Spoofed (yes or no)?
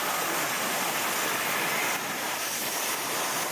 no